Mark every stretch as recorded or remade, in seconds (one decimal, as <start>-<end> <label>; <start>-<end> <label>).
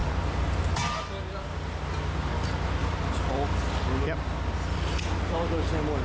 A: 0.0-2.8 recorded; 2.8-3.6 remade; 3.6-6.0 recorded